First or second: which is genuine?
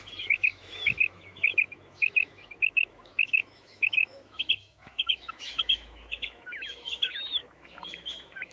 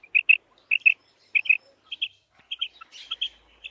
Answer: second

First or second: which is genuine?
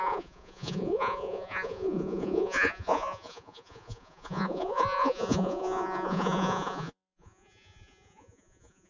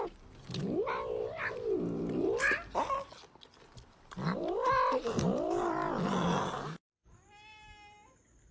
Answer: second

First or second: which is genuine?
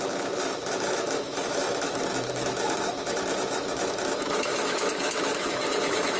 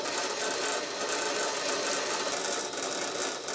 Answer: second